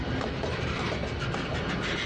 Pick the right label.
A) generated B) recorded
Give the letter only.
B